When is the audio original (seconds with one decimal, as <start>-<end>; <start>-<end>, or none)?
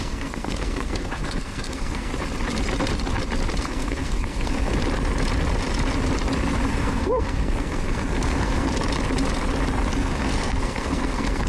2.1-3.6; 4.7-6.7; 8.7-10.0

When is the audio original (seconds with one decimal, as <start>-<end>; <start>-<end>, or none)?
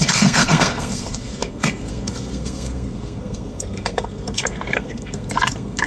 none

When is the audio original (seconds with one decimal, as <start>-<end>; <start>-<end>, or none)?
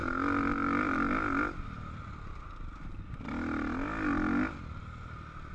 0.0-5.5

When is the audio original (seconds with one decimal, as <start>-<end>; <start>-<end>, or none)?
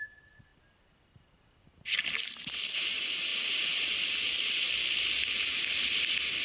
0.0-6.4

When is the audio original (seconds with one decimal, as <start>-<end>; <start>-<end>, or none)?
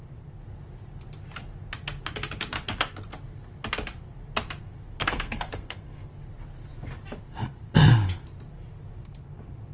0.0-5.0; 6.1-9.7